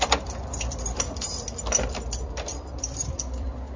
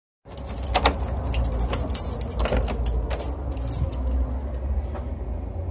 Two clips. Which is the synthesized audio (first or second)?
first